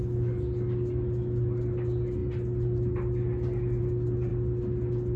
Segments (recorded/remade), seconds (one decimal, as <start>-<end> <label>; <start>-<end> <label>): 0.0-5.2 recorded